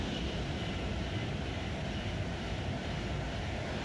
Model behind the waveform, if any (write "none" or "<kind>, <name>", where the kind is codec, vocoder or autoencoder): none